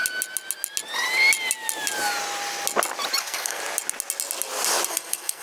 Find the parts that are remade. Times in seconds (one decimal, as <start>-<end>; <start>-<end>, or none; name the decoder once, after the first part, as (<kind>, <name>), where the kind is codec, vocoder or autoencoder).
3.2-3.6 (codec, SNAC); 4.9-5.4